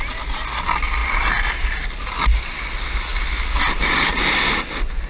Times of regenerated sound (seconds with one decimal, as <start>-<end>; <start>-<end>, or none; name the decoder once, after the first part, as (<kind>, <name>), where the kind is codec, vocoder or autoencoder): none